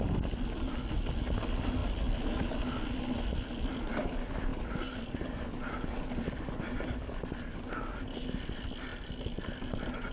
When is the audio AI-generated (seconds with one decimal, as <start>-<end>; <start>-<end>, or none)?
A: none

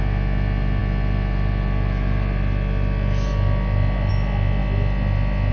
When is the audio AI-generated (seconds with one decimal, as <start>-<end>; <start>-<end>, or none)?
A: none

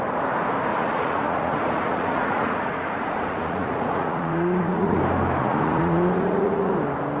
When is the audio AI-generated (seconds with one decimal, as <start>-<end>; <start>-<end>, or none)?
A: 0.7-5.0; 5.4-6.7

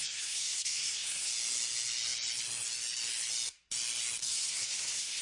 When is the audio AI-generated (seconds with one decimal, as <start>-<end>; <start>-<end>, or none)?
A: 0.0-1.3; 4.3-5.2

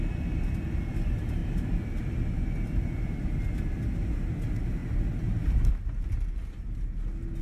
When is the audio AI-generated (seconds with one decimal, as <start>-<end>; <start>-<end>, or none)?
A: 4.8-5.7